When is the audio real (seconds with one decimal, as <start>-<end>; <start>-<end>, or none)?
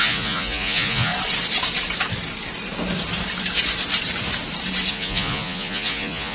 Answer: 1.1-4.9